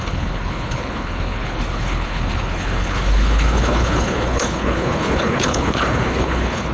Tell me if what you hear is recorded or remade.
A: remade